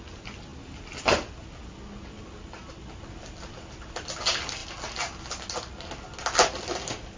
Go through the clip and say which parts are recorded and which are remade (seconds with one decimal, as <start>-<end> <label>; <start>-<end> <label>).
0.0-7.2 recorded